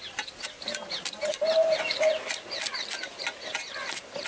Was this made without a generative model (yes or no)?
yes